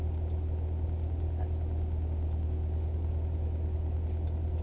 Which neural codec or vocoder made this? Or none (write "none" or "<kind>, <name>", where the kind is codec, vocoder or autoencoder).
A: none